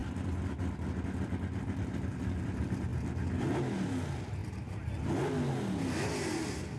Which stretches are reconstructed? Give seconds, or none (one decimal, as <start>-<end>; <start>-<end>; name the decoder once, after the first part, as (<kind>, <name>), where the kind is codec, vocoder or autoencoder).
none